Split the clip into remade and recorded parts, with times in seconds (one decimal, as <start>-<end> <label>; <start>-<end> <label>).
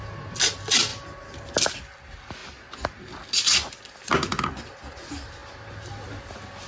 0.0-6.7 recorded